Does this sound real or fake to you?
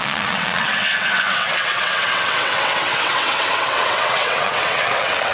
fake